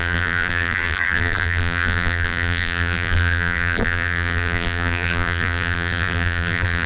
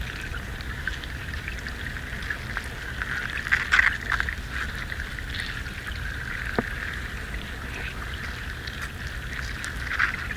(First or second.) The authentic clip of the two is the second